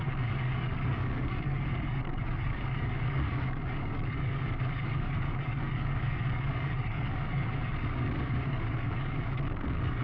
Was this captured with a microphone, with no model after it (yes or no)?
no